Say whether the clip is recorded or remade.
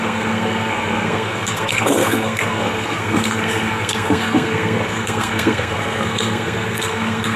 remade